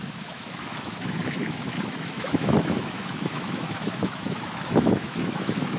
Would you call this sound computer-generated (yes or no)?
yes